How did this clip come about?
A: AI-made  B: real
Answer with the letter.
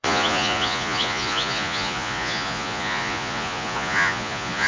A